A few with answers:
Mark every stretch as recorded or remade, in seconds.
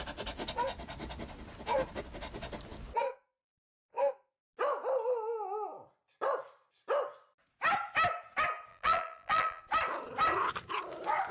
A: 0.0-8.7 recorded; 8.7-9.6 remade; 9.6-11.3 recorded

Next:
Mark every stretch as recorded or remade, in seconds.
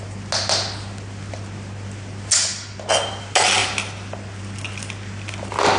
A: 0.0-5.8 recorded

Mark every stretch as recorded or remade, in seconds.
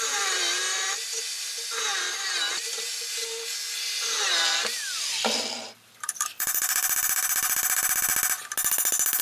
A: 0.0-0.6 remade; 0.6-2.1 recorded; 2.1-8.1 remade; 8.1-9.2 recorded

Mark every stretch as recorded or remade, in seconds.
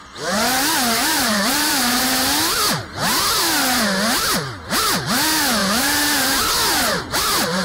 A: 0.0-1.0 recorded; 1.0-2.0 remade; 2.0-5.6 recorded; 5.6-6.5 remade; 6.5-7.6 recorded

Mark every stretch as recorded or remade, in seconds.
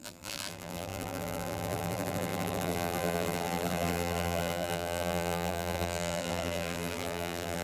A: 0.0-7.6 remade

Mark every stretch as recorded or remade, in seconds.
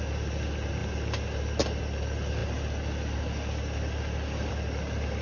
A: 0.0-5.2 recorded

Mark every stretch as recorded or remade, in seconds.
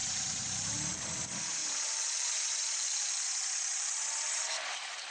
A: 0.0-5.1 remade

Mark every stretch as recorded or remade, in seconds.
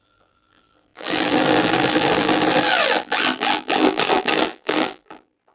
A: 0.0-5.5 remade